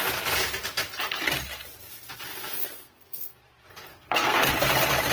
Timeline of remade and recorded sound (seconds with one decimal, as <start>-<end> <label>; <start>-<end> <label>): 0.0-2.6 recorded; 2.6-3.3 remade; 3.3-3.9 recorded; 3.9-4.5 remade; 4.5-5.1 recorded